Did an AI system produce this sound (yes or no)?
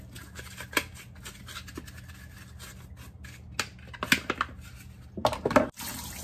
no